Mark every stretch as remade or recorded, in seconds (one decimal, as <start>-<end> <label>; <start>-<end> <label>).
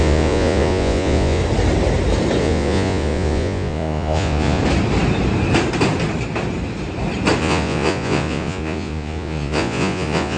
0.0-1.4 remade; 1.4-2.4 recorded; 2.4-4.6 remade; 4.6-7.4 recorded; 7.4-10.4 remade